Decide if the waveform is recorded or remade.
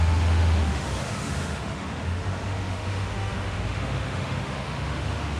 remade